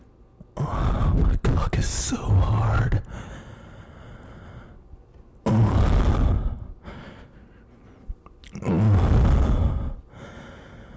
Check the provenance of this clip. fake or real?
real